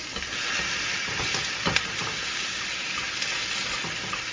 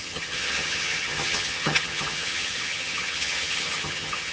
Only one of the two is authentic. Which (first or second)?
first